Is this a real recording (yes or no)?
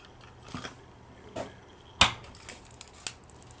yes